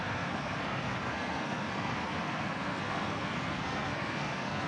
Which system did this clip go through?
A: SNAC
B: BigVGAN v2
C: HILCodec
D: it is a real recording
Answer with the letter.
A